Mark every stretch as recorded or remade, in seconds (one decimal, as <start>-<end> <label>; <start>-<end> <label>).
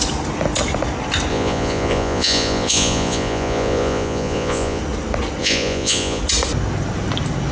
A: 0.0-1.3 recorded; 1.3-4.8 remade; 4.8-5.4 recorded; 5.4-6.2 remade; 6.2-7.5 recorded